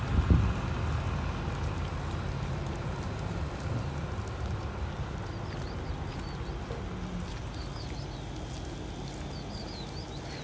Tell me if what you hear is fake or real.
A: real